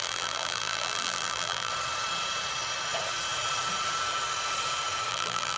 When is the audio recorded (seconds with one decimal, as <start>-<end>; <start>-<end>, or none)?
1.7-5.1